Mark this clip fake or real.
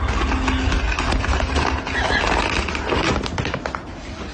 real